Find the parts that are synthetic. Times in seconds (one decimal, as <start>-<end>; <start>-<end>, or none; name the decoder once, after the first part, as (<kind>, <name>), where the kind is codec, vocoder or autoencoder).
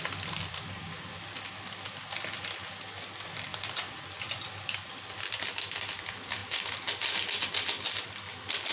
3.5-5.3 (vocoder, BigVGAN v2); 6.4-8.1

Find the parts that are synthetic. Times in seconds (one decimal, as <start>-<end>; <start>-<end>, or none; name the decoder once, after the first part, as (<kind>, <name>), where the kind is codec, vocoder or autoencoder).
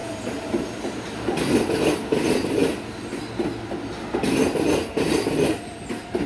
0.0-0.6 (vocoder, BigVGAN v2)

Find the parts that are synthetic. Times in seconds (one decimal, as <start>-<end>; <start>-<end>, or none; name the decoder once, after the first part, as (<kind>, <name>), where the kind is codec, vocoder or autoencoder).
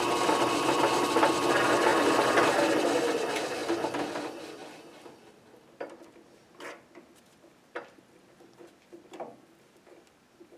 1.9-2.4 (vocoder, BigVGAN v2)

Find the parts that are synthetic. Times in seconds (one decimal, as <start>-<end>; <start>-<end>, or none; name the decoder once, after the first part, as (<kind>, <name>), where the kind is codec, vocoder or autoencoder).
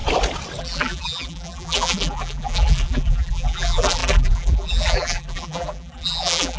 0.6-6.6 (vocoder, BigVGAN v2)